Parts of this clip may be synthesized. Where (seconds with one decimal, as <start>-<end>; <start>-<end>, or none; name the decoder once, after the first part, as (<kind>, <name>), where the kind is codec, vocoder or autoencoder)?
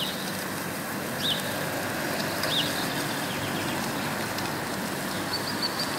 none